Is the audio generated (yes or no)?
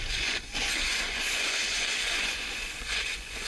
yes